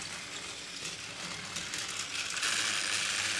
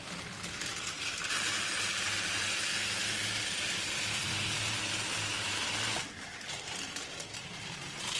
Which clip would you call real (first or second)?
first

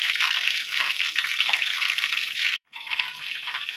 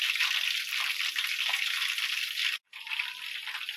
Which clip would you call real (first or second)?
second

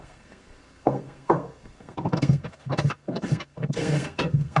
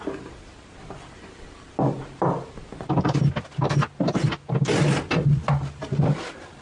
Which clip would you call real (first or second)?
second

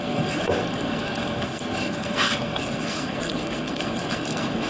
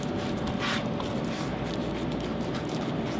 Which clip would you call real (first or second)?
second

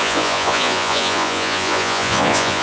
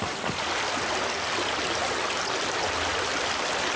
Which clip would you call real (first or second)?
second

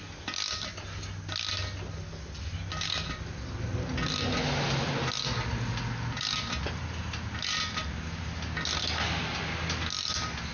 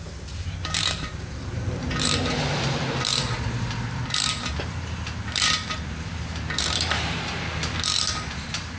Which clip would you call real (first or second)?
first